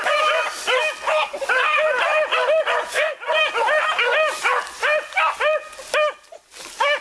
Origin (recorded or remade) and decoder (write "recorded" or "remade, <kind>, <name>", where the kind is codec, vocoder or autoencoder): recorded